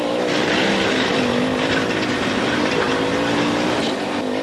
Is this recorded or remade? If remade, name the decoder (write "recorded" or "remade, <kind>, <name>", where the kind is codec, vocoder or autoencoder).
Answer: recorded